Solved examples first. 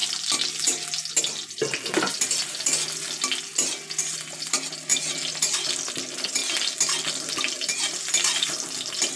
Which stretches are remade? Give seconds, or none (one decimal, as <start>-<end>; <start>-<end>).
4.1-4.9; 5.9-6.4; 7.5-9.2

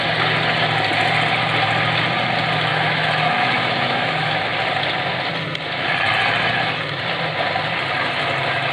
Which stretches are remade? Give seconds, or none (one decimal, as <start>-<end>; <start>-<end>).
2.7-4.4

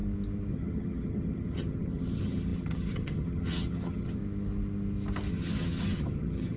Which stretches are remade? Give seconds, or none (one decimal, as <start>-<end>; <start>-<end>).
0.5-4.2; 5.3-6.6